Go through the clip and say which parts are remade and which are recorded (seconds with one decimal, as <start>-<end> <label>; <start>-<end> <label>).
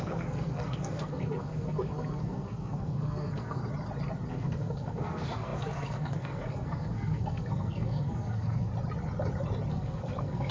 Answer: 0.0-3.6 remade; 3.6-4.3 recorded; 4.3-8.7 remade; 8.7-9.7 recorded; 9.7-10.5 remade